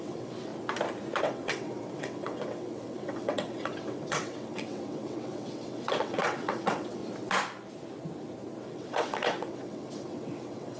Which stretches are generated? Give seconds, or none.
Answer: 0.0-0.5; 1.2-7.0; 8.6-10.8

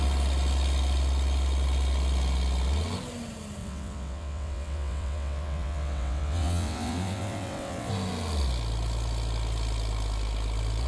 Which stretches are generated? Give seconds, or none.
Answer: 3.6-7.9

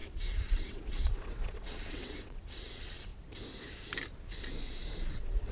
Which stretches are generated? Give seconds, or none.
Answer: 0.0-3.1; 5.1-5.5

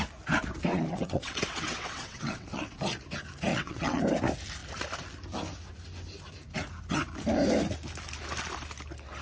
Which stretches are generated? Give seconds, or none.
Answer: 0.7-2.8; 3.5-4.0

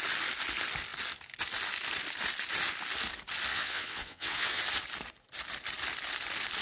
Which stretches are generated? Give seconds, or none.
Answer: 3.5-4.6